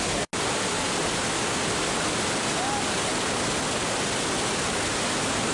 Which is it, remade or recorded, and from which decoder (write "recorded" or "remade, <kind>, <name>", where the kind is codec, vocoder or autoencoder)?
recorded